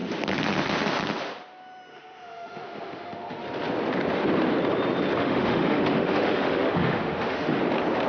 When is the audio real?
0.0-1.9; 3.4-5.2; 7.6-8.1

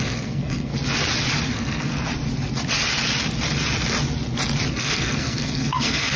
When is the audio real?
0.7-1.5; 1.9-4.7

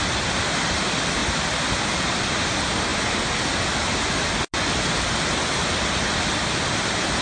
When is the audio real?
0.0-7.2

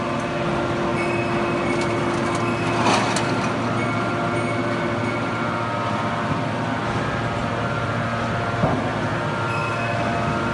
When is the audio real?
0.0-10.5

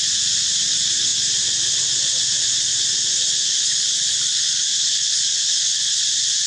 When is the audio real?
0.0-3.4; 6.0-6.5

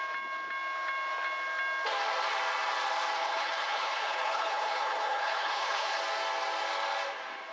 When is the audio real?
0.0-3.2; 6.0-7.5

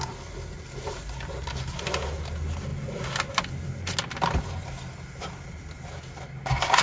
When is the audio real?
0.0-6.8